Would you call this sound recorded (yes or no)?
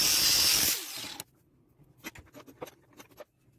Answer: yes